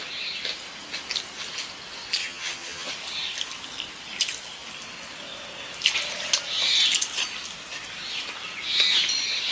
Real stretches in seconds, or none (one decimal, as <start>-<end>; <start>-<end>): 0.0-2.2; 2.9-9.5